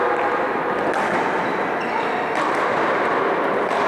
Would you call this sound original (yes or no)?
yes